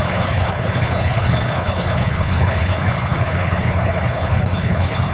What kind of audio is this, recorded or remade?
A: remade